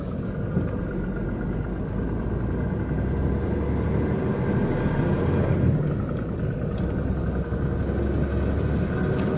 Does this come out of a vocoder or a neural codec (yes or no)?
no